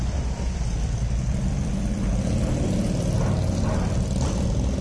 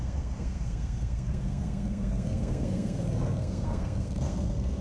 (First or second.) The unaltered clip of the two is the first